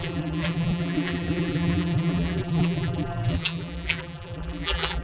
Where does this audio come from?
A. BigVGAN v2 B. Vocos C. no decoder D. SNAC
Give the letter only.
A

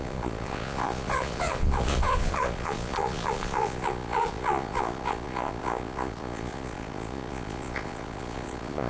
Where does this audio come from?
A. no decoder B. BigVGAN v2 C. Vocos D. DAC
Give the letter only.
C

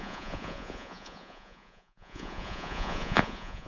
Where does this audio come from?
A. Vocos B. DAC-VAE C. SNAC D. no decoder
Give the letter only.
A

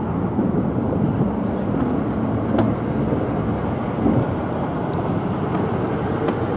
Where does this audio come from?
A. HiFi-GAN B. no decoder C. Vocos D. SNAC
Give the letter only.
B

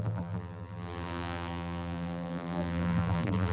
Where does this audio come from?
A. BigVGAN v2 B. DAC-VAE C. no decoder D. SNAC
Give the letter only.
A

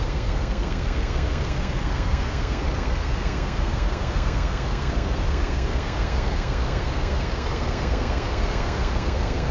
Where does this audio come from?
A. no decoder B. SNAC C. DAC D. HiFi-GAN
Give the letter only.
B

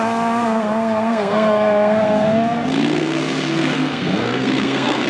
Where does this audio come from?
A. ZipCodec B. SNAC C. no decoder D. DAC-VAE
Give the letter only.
B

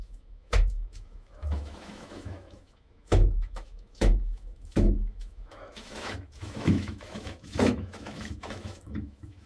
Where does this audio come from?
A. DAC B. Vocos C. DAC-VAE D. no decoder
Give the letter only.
C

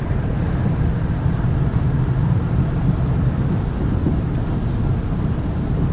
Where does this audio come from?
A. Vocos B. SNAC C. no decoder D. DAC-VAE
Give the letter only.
C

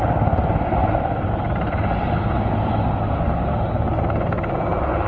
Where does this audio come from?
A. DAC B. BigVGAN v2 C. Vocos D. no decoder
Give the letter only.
D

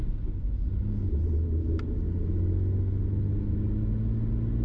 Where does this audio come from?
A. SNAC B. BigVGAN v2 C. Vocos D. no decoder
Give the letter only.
D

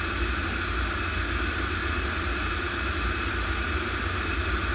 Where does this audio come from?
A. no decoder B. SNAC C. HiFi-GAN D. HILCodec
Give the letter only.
A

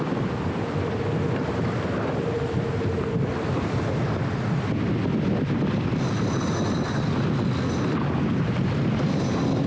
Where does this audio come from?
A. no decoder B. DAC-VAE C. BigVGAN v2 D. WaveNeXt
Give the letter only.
A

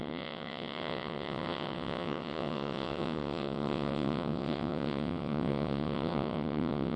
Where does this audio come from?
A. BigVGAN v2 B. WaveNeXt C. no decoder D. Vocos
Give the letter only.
B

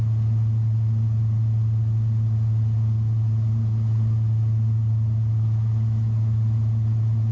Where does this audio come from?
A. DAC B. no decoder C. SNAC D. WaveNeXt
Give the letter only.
B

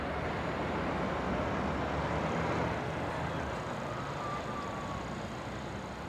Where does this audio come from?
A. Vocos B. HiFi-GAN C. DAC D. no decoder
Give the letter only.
D